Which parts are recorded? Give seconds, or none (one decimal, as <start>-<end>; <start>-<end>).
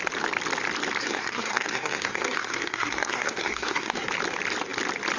0.0-1.0; 4.1-5.2